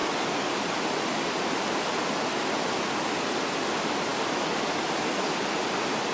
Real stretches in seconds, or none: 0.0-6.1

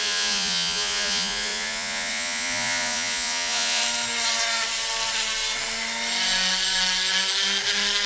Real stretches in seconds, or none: 3.8-8.1

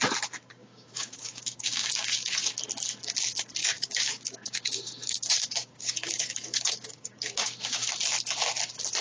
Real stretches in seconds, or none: 0.0-0.6; 2.5-3.6; 7.9-9.0

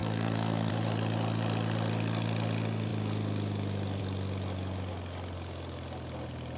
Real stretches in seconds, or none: 0.7-6.6

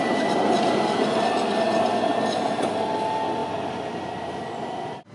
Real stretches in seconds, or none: 0.0-5.1

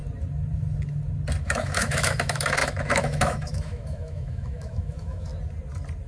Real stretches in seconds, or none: 0.0-1.4; 5.3-6.1